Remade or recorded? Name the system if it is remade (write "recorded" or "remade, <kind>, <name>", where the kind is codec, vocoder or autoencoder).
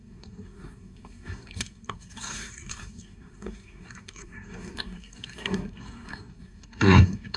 remade, codec, SNAC